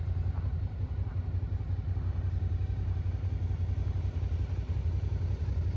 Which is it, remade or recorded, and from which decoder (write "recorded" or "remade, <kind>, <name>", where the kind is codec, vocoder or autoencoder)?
recorded